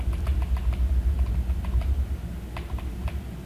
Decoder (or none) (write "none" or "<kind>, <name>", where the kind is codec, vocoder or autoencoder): none